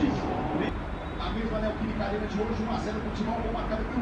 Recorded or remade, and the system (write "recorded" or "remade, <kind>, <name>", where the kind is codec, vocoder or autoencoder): recorded